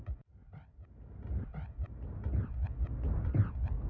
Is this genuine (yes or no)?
yes